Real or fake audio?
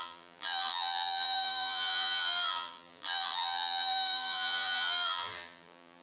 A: fake